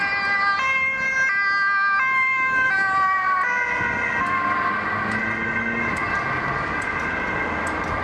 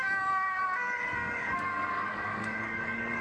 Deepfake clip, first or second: second